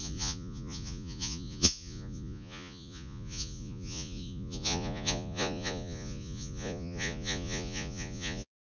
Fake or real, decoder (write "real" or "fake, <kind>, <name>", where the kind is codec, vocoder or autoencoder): fake, vocoder, Vocos